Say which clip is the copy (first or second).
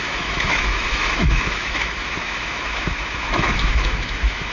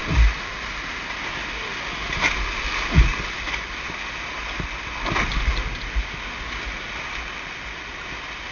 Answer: first